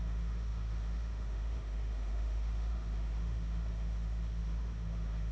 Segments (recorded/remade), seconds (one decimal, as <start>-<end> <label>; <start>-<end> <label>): 0.0-5.3 remade